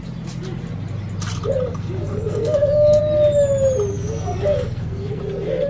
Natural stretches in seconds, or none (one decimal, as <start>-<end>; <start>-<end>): 0.0-1.7; 3.0-3.9; 5.2-5.7